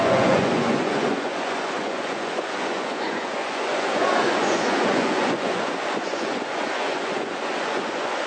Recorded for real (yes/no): no